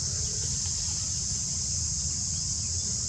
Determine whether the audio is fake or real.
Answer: real